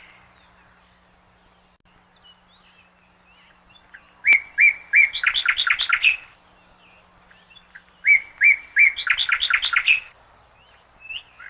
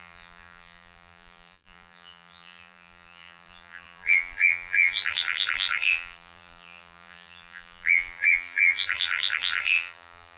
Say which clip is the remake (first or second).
second